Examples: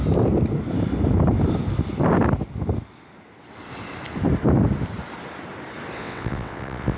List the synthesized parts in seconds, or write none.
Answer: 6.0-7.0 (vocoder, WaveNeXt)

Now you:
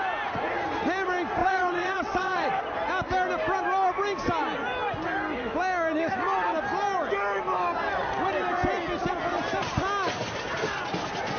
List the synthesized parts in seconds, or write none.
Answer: 1.4-2.6 (vocoder, WaveNeXt)

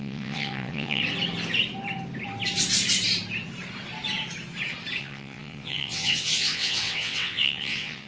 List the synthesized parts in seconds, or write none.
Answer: 0.0-1.0 (vocoder, WaveNeXt); 5.0-8.1